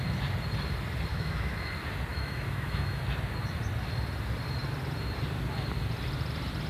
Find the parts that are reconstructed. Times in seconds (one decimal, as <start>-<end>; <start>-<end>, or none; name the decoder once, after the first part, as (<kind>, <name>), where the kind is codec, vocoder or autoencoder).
1.1-1.7 (autoencoder, DAC-VAE); 2.1-3.0